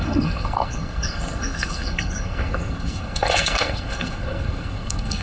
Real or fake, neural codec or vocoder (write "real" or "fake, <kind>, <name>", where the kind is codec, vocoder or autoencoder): fake, codec, SNAC